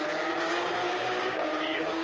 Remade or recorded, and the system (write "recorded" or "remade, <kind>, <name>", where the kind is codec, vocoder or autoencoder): remade, codec, DAC